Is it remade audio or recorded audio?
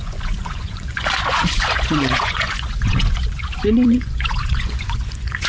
remade